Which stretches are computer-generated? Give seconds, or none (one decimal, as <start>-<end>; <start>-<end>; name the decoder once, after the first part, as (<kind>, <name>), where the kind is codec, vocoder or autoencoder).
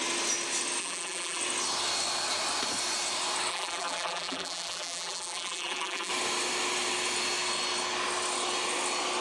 0.8-1.4 (vocoder, BigVGAN v2); 3.5-6.1